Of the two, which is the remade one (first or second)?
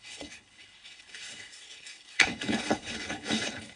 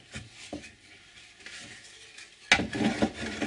first